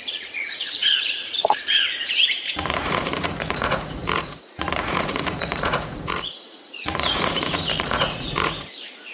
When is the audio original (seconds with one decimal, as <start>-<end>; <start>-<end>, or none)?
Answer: none